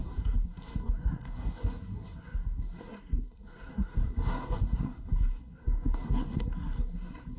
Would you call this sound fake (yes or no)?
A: yes